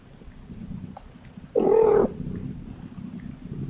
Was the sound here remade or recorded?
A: recorded